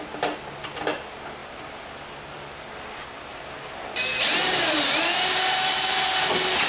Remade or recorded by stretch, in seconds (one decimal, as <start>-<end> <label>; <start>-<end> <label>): 0.0-3.3 recorded; 3.3-4.0 remade; 4.0-4.4 recorded; 4.4-5.0 remade; 5.0-6.7 recorded